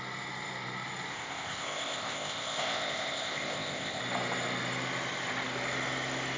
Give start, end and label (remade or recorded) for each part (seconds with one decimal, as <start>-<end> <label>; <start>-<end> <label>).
0.0-1.1 recorded; 1.1-4.0 remade; 4.0-6.4 recorded